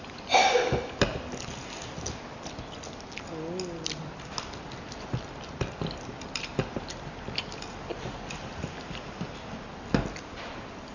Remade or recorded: recorded